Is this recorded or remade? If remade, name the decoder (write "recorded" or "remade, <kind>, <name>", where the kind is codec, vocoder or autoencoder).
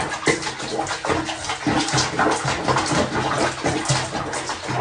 recorded